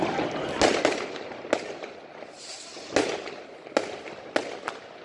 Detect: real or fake real